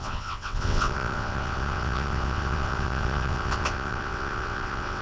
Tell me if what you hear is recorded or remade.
remade